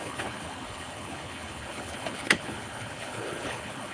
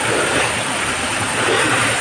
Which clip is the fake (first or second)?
first